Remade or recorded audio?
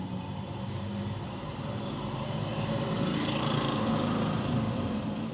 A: remade